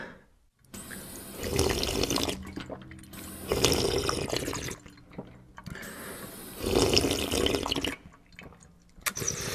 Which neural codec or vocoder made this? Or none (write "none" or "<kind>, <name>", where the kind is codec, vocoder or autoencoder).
none